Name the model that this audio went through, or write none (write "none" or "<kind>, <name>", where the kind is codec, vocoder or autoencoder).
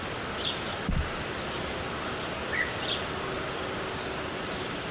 none